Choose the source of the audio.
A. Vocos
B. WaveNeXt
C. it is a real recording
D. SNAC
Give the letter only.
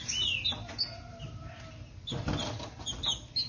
C